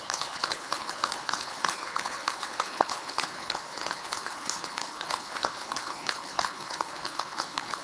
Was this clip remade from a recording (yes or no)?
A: yes